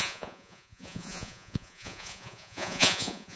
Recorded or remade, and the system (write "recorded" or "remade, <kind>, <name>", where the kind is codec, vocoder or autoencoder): remade, vocoder, Vocos